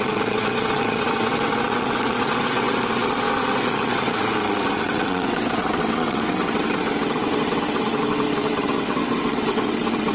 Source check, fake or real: fake